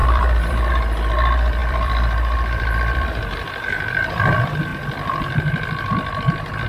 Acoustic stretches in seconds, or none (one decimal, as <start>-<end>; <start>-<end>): 0.7-1.6; 4.1-4.7; 5.9-6.7